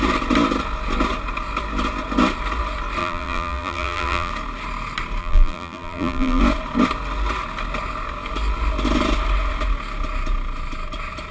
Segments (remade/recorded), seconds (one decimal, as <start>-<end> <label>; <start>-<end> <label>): 0.0-3.0 recorded; 3.0-4.3 remade; 4.3-5.2 recorded; 5.2-6.4 remade; 6.4-11.3 recorded